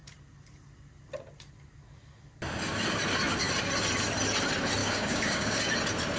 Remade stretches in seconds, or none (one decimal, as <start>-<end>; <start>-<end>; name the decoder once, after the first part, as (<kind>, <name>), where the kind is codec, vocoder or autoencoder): 4.8-5.6 (codec, DAC)